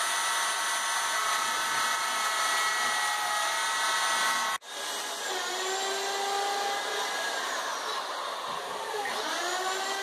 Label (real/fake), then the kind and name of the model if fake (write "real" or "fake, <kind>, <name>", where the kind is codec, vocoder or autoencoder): real